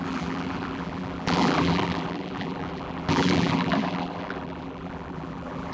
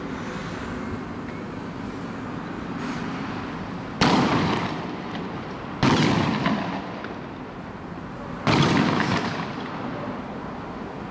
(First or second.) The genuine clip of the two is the second